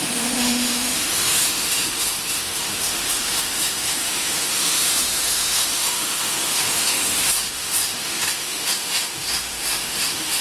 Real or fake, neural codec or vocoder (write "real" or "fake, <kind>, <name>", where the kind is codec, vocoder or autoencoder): fake, autoencoder, DAC-VAE